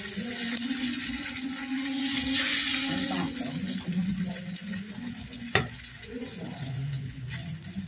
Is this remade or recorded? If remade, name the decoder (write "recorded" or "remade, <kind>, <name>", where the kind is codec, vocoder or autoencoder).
remade, vocoder, Vocos